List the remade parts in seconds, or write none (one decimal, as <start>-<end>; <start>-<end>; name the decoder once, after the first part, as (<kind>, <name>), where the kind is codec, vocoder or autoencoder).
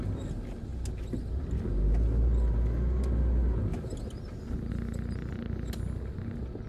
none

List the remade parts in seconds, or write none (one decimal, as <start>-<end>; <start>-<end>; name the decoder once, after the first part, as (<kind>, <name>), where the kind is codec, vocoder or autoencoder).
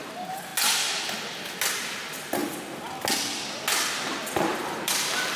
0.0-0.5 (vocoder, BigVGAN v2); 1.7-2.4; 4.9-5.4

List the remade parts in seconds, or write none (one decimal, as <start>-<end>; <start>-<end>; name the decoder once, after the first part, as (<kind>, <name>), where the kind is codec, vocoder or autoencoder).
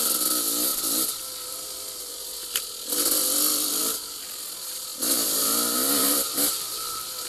none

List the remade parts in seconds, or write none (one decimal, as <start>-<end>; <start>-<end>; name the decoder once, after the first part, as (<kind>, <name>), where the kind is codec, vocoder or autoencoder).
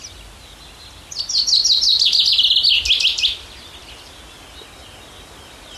none